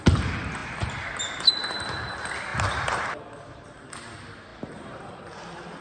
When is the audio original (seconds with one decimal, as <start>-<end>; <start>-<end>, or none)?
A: 0.0-5.8